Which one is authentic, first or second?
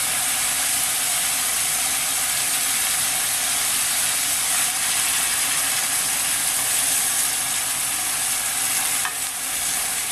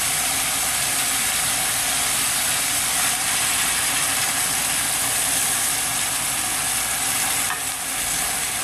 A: first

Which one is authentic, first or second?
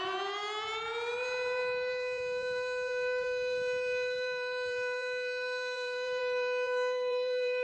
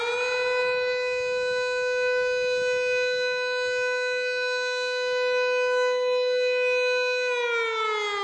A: second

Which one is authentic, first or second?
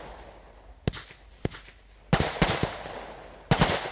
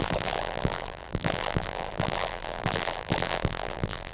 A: first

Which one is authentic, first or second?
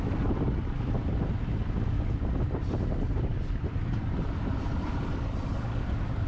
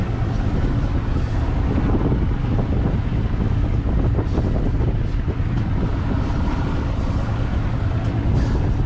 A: second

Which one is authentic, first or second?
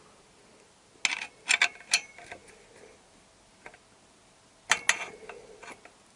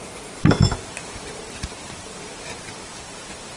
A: first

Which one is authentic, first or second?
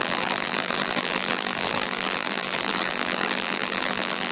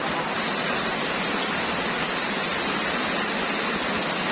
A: second